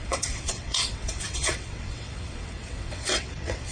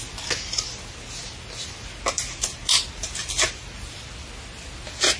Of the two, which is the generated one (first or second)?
first